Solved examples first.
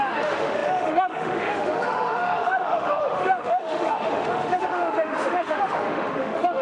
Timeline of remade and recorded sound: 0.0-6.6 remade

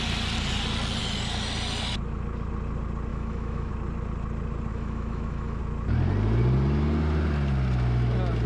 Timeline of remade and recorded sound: 0.0-3.1 recorded; 3.1-3.7 remade; 3.7-4.7 recorded; 4.7-5.6 remade; 5.6-8.5 recorded

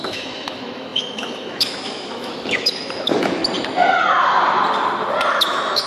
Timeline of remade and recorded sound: 0.0-3.4 remade; 3.4-5.3 recorded; 5.3-5.9 remade

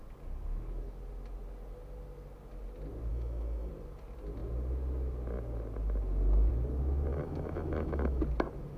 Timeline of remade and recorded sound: 0.0-3.1 recorded; 3.1-3.7 remade; 3.7-7.1 recorded; 7.1-8.2 remade; 8.2-8.8 recorded

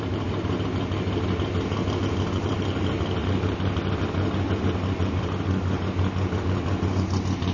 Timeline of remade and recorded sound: 0.0-7.5 recorded

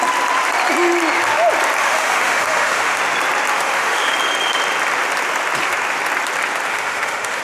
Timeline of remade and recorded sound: 0.0-1.8 recorded; 1.8-3.0 remade; 3.0-3.5 recorded; 3.5-4.1 remade; 4.1-6.7 recorded; 6.7-7.4 remade